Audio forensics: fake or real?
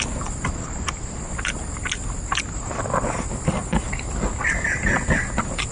real